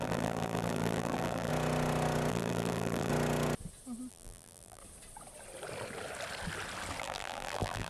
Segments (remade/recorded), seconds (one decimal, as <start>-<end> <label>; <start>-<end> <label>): 0.0-1.5 remade; 1.5-2.3 recorded; 2.3-3.1 remade; 3.1-4.1 recorded; 4.1-4.8 remade; 4.8-7.0 recorded; 7.0-7.9 remade